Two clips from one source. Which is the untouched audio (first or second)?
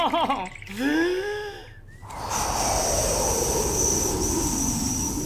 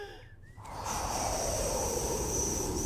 first